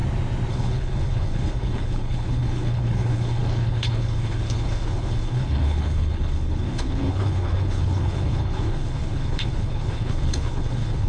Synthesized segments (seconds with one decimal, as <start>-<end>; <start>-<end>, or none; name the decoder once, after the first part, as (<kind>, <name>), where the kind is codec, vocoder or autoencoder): 0.5-11.1 (codec, HILCodec)